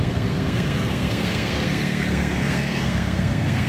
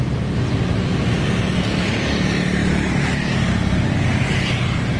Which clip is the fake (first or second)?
first